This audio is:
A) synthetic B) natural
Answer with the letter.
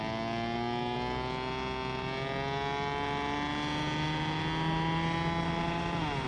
B